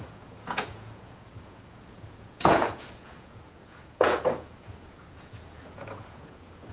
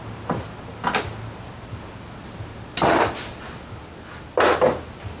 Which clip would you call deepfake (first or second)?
first